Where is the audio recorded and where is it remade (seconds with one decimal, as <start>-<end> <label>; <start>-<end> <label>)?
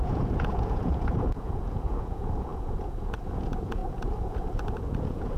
0.0-5.4 remade